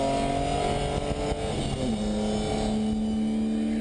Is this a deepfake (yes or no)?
no